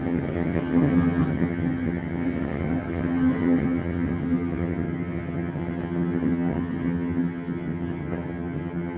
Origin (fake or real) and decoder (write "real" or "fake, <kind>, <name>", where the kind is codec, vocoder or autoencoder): fake, vocoder, HiFi-GAN